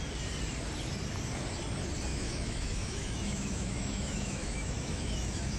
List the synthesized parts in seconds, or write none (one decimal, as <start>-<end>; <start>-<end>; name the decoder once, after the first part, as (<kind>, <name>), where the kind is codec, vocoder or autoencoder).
2.1-5.6 (autoencoder, DAC-VAE)